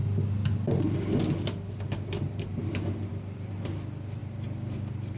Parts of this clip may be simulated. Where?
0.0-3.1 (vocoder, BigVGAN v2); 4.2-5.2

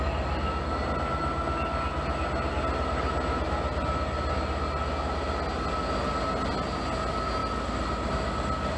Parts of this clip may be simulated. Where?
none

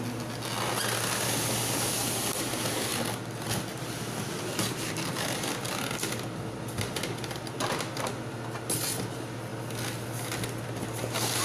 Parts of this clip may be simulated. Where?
none

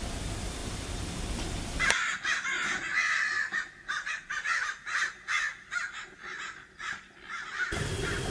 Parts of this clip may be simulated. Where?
0.6-1.1 (vocoder, BigVGAN v2); 2.9-4.3